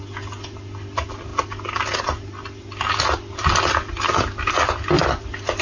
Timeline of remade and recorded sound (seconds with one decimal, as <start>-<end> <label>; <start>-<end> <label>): 0.0-5.6 recorded